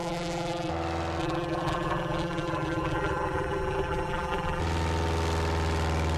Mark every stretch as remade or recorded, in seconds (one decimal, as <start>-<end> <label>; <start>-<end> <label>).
0.0-0.7 remade; 0.7-1.2 recorded; 1.2-4.6 remade; 4.6-6.2 recorded